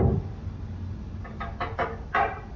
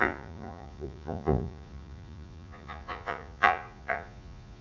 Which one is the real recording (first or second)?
first